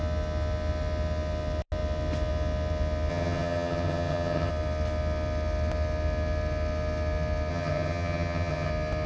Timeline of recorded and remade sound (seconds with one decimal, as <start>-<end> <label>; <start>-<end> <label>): 0.0-3.1 recorded; 3.1-4.5 remade; 4.5-7.5 recorded; 7.5-8.7 remade; 8.7-9.1 recorded